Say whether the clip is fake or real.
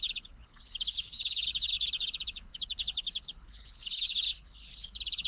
fake